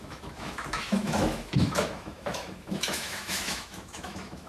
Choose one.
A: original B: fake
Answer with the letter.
B